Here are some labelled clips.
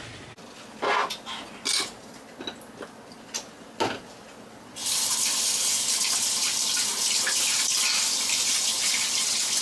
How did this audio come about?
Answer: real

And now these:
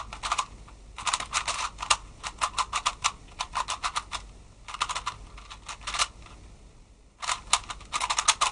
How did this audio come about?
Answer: real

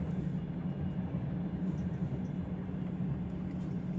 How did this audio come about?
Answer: real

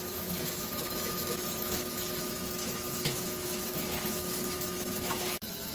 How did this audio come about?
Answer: fake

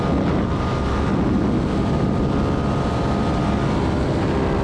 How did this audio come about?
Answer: real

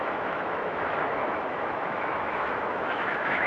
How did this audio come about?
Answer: fake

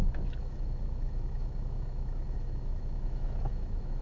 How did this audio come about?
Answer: fake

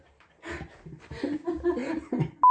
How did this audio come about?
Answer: real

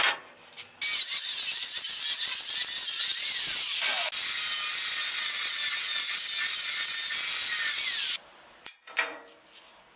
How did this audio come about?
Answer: real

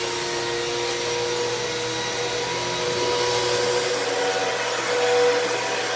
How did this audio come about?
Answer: real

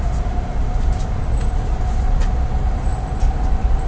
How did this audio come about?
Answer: real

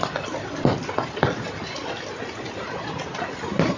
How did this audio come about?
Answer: real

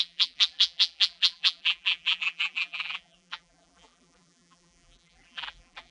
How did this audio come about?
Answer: fake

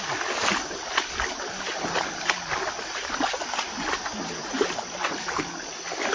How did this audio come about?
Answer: real